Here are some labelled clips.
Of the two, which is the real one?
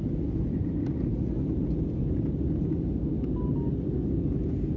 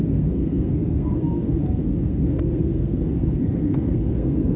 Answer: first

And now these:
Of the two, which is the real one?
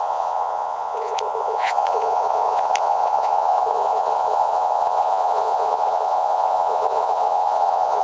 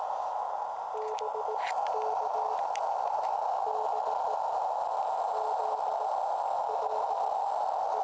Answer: second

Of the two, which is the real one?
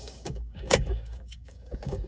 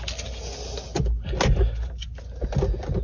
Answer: second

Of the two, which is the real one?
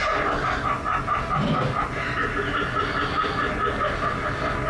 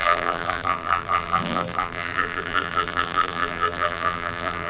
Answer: first